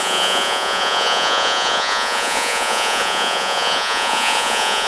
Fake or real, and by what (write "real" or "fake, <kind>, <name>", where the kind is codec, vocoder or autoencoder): fake, vocoder, Vocos